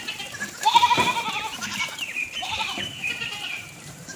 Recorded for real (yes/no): no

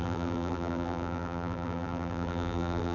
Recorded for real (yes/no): no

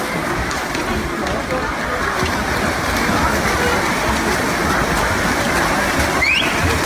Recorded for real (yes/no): yes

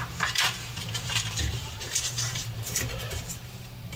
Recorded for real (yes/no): no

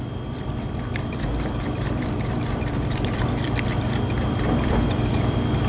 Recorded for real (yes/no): no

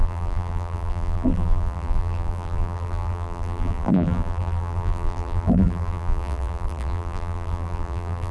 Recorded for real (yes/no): no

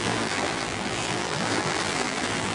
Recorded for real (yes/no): no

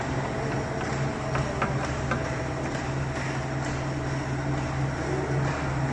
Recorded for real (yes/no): yes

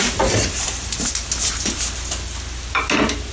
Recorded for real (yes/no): yes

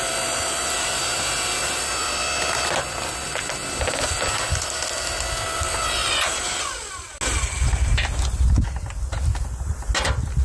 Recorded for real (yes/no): yes